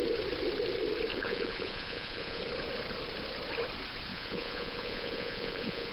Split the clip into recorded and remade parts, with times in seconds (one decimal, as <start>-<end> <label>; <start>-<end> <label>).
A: 0.0-1.1 recorded; 1.1-2.4 remade; 2.4-4.1 recorded; 4.1-5.9 remade